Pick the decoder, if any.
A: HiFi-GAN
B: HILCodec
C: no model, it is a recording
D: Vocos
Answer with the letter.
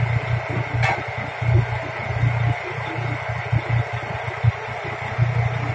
C